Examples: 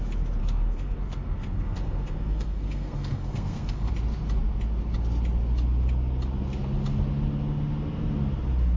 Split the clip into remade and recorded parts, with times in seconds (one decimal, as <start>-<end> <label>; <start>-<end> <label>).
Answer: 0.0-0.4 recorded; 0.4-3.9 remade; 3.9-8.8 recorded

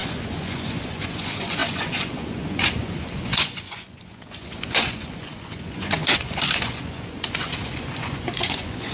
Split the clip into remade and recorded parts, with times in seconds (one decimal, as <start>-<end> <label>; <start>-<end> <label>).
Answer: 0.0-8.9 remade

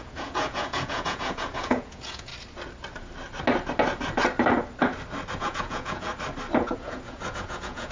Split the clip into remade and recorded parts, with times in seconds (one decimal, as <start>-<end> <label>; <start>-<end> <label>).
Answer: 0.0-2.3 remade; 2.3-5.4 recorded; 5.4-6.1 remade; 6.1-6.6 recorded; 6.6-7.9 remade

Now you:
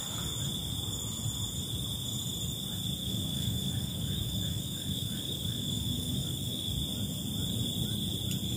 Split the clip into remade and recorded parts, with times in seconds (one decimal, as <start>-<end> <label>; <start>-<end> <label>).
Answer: 0.0-3.0 recorded; 3.0-6.7 remade; 6.7-8.6 recorded

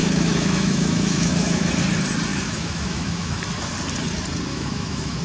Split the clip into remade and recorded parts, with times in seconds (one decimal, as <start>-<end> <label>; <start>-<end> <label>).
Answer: 0.0-1.7 remade; 1.7-2.3 recorded; 2.3-3.4 remade; 3.4-4.5 recorded; 4.5-5.2 remade

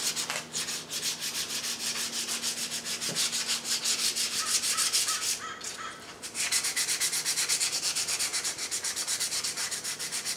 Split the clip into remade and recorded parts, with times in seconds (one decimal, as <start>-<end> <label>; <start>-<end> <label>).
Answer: 0.0-8.3 recorded; 8.3-10.4 remade

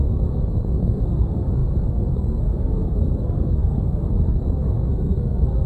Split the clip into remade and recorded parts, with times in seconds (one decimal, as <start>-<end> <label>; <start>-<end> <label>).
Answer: 0.0-5.7 remade

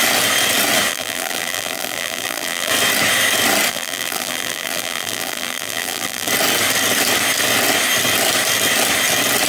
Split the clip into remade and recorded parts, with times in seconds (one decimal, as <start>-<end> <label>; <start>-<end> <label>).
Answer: 0.0-0.9 recorded; 0.9-2.7 remade; 2.7-3.7 recorded; 3.7-6.3 remade; 6.3-9.5 recorded